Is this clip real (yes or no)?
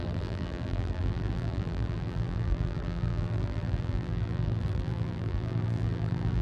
no